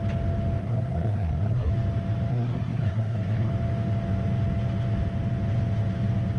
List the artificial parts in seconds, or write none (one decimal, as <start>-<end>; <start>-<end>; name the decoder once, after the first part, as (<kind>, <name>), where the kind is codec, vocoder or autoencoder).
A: 0.6-1.7 (codec, SNAC); 2.3-3.5